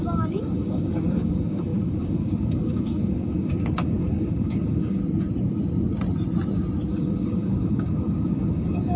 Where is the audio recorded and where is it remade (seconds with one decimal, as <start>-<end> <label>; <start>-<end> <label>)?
0.0-5.0 remade; 5.0-6.9 recorded; 6.9-9.0 remade